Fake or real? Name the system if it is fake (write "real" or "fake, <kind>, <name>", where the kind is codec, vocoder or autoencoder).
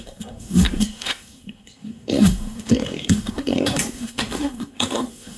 fake, codec, SNAC